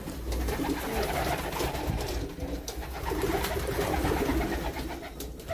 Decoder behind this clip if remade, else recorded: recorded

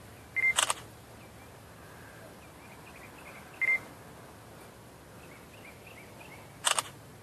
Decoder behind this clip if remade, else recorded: recorded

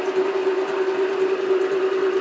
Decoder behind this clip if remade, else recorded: recorded